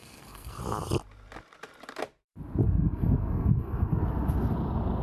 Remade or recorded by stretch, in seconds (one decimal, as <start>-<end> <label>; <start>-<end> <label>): 0.0-0.6 remade; 0.6-2.6 recorded; 2.6-4.0 remade; 4.0-5.0 recorded